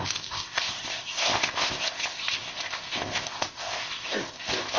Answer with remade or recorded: remade